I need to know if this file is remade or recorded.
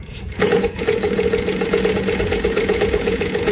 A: remade